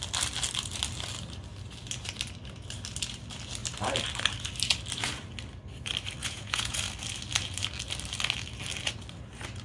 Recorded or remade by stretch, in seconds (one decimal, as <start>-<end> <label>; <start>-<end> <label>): 0.0-6.2 recorded; 6.2-6.8 remade; 6.8-9.6 recorded